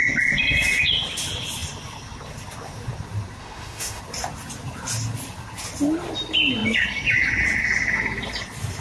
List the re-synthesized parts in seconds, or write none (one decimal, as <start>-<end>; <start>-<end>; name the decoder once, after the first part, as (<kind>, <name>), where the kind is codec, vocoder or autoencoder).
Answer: 3.4-4.0 (autoencoder, DAC-VAE)